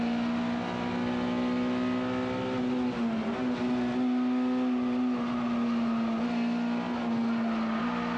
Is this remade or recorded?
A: recorded